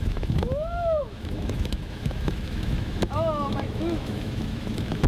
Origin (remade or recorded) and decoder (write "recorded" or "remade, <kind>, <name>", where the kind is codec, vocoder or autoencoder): remade, autoencoder, DAC-VAE